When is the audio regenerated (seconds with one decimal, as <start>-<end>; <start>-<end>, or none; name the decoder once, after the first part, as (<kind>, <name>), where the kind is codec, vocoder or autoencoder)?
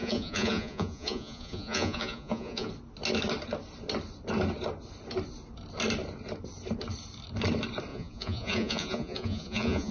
0.0-2.7 (vocoder, Vocos); 7.9-9.9